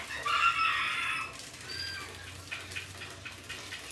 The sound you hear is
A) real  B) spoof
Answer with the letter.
A